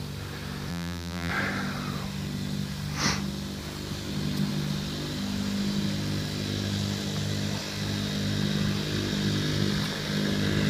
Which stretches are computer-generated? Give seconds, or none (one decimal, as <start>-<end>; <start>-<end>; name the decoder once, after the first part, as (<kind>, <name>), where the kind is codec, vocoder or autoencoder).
0.7-1.3 (vocoder, BigVGAN v2)